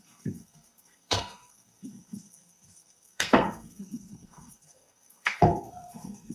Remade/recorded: remade